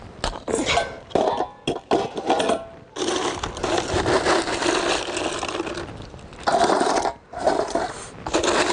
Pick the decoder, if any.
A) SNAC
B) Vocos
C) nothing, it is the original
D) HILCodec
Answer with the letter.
C